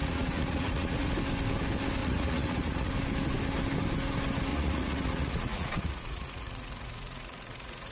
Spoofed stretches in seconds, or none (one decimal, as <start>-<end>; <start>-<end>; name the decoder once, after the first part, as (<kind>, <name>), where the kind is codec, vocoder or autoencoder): 0.0-1.1 (vocoder, Vocos); 2.0-2.9; 4.5-7.9

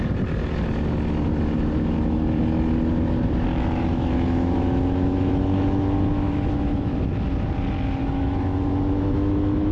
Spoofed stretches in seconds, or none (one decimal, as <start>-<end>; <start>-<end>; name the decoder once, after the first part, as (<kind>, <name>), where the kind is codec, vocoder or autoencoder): 3.5-7.0 (autoencoder, DAC-VAE); 8.0-9.7

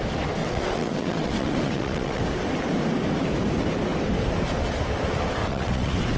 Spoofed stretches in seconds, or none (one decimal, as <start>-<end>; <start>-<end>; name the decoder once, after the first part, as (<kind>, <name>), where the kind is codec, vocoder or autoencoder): 0.4-2.2 (vocoder, WaveNeXt); 5.4-6.2

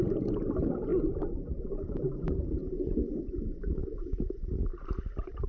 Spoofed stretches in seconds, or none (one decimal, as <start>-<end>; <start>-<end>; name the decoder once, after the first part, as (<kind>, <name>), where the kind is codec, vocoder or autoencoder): 2.6-3.4 (vocoder, Vocos); 3.8-4.4